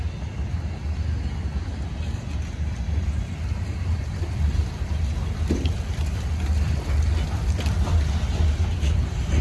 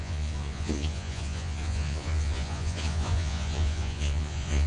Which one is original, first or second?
first